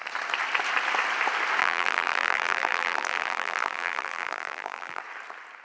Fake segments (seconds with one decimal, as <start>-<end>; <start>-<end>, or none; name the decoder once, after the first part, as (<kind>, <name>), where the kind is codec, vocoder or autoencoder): 1.6-5.0 (vocoder, BigVGAN v2)